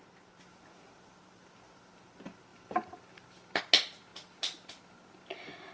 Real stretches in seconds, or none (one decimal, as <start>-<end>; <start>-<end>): 0.0-2.5; 3.6-5.7